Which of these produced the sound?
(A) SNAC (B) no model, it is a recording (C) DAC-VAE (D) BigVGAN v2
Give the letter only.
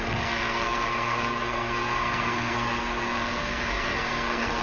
A